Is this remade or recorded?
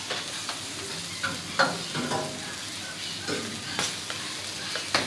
recorded